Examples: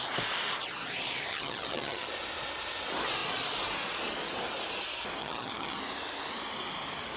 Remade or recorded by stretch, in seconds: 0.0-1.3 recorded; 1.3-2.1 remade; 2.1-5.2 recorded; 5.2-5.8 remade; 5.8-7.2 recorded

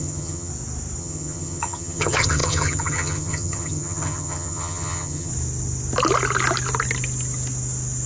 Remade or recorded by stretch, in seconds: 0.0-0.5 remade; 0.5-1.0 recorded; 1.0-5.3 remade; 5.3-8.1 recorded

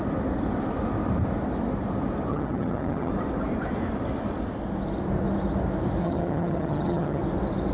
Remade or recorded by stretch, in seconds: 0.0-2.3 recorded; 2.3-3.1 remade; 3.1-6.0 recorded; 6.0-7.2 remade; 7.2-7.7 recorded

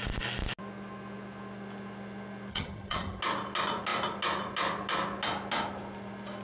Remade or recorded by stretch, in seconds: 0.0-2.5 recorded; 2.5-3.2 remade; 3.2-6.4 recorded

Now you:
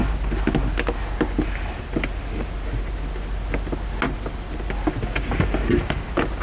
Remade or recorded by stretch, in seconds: 0.0-6.4 recorded

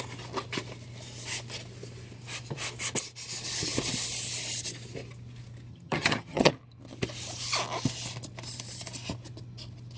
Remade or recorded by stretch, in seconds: 0.0-5.7 recorded; 5.7-6.5 remade; 6.5-10.0 recorded

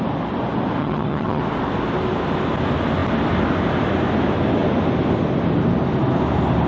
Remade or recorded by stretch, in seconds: 0.0-0.8 recorded; 0.8-1.4 remade; 1.4-6.7 recorded

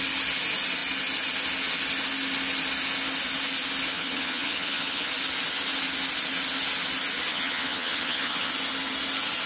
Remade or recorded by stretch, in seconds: 0.0-3.9 recorded; 3.9-5.1 remade; 5.1-7.3 recorded; 7.3-8.5 remade; 8.5-9.5 recorded